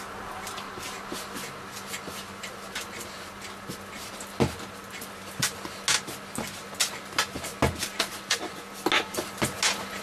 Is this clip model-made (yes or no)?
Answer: no